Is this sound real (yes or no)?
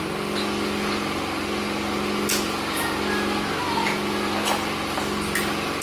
yes